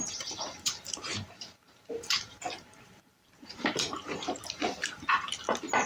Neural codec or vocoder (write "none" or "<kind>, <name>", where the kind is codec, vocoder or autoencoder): vocoder, BigVGAN v2